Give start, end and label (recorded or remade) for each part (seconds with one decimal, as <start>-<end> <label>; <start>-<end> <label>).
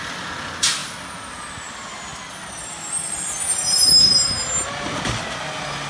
0.0-5.9 recorded